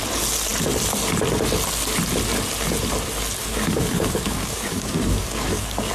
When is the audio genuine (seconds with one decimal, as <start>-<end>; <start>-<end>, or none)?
0.0-3.4